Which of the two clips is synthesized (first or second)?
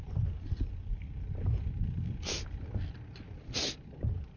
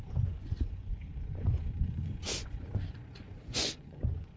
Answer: second